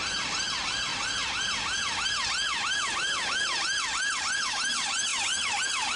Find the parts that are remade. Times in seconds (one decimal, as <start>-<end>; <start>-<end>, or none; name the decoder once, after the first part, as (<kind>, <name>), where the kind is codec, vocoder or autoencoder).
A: 0.0-0.9 (vocoder, BigVGAN v2); 4.2-6.0